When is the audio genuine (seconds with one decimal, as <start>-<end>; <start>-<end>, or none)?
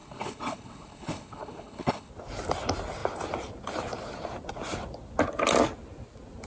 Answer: 2.1-6.5